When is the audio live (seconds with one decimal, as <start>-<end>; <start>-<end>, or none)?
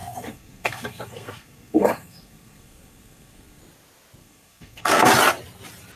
3.6-4.2; 5.1-6.0